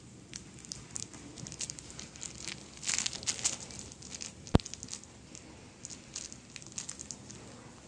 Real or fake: real